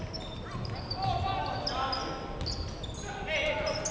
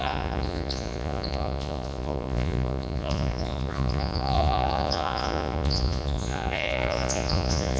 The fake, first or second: second